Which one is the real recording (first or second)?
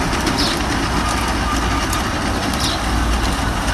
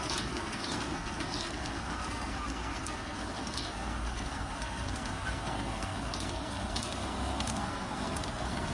first